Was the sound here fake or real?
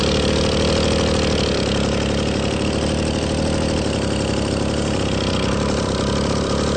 real